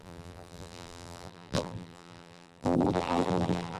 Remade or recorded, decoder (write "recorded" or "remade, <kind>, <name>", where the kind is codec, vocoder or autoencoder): remade, vocoder, BigVGAN v2